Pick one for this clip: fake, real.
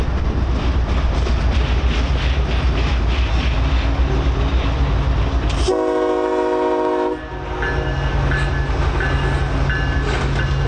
real